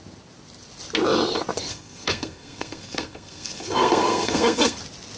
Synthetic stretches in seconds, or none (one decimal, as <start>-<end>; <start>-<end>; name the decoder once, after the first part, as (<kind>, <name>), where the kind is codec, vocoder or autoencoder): 1.7-4.8 (codec, SNAC)